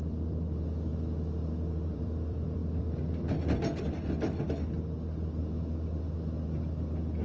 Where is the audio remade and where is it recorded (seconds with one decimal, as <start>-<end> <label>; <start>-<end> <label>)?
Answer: 0.0-0.9 remade; 0.9-1.7 recorded; 1.7-2.6 remade; 2.6-7.2 recorded